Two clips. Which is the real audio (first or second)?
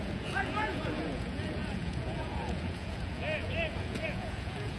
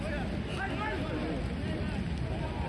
second